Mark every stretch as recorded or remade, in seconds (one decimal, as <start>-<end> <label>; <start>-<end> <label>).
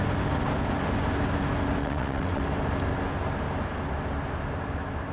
0.0-1.8 recorded; 1.8-2.4 remade; 2.4-5.1 recorded